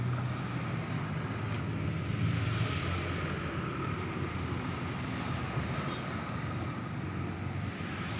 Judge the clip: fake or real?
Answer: real